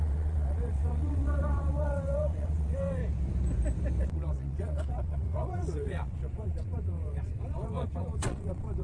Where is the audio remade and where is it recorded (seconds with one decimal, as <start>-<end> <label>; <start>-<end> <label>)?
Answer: 0.0-3.0 remade; 3.0-4.0 recorded; 4.0-8.8 remade